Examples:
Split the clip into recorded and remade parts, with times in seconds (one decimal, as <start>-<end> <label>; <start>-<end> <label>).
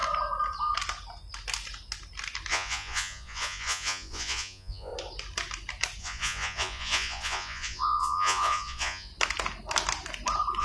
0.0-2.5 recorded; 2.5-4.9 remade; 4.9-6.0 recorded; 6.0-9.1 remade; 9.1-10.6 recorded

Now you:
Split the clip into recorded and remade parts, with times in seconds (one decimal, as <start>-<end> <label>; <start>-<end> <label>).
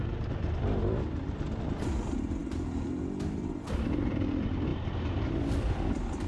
0.0-4.7 recorded; 4.7-5.3 remade; 5.3-6.3 recorded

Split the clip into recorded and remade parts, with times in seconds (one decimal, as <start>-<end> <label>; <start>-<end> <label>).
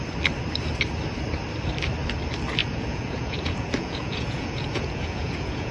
0.0-2.6 recorded; 2.6-5.7 remade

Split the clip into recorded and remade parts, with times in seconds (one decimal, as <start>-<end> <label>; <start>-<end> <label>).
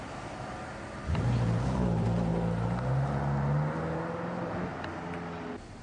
0.0-2.3 remade; 2.3-5.8 recorded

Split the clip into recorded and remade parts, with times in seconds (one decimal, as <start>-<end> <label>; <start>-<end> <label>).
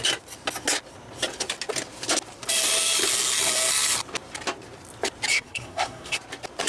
0.0-5.3 recorded; 5.3-6.2 remade; 6.2-6.7 recorded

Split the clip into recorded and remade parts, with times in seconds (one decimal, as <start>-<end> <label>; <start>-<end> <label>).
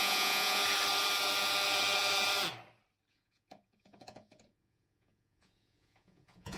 0.0-0.6 remade; 0.6-3.1 recorded; 3.1-6.6 remade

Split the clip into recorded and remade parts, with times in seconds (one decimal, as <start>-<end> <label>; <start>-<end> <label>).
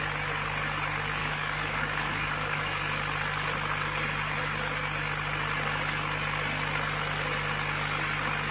0.0-1.2 recorded; 1.2-2.8 remade; 2.8-8.5 recorded